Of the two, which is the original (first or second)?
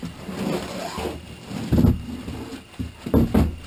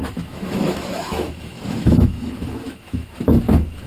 first